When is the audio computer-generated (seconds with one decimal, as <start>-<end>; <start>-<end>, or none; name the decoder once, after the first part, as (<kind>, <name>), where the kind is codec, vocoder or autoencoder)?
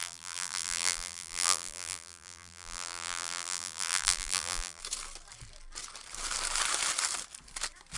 0.0-4.8 (vocoder, BigVGAN v2)